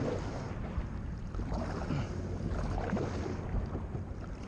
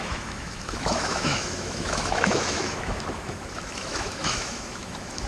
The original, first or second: first